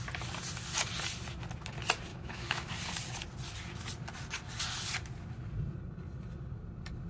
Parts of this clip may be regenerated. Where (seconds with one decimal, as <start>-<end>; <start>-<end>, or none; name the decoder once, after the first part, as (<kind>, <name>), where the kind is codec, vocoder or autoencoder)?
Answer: 2.1-2.7 (autoencoder, DAC-VAE)